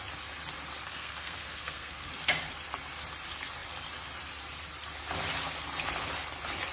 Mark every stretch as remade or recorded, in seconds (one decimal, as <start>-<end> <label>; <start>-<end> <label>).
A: 0.0-0.8 recorded; 0.8-2.1 remade; 2.1-6.7 recorded